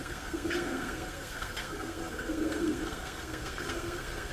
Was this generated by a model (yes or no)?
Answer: yes